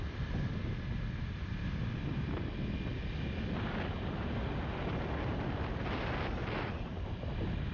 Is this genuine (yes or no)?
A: yes